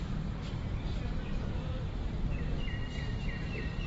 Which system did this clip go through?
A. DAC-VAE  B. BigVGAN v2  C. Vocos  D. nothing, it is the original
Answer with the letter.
B